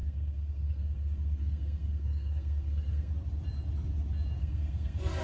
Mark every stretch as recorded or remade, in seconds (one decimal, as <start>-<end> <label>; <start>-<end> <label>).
0.0-3.1 remade; 3.1-4.4 recorded; 4.4-5.2 remade